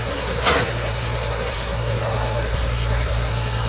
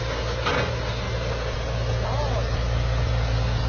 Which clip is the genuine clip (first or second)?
second